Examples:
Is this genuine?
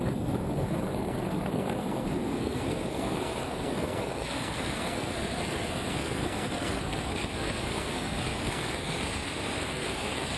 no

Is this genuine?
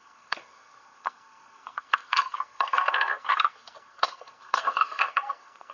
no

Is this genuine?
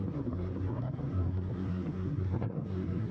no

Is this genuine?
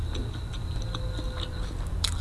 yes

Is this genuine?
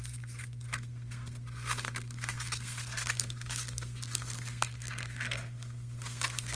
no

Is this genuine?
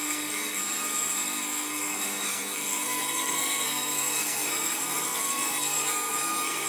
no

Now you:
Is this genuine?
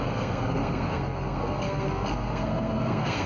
no